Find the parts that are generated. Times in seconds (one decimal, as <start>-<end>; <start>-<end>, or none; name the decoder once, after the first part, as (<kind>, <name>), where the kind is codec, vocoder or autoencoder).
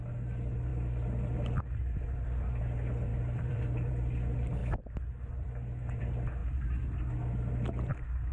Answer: 3.1-3.9 (vocoder, BigVGAN v2)